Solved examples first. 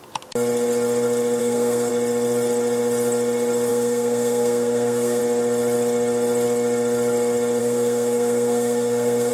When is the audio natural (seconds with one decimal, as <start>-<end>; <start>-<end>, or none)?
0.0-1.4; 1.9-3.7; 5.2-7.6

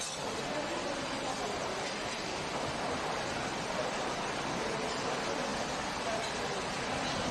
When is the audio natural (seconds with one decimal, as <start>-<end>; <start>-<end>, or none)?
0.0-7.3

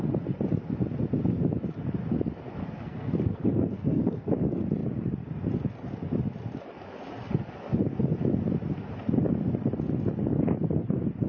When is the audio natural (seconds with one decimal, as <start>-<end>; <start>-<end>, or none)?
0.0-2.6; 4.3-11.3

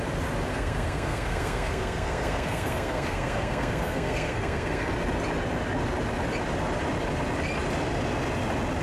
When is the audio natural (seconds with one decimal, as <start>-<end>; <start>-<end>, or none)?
0.0-0.5; 4.9-8.8